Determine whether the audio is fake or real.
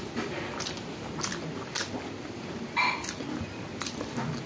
real